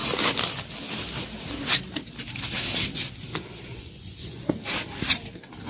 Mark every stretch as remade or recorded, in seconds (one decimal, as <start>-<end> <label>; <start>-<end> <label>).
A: 0.0-3.3 recorded; 3.3-4.5 remade; 4.5-5.7 recorded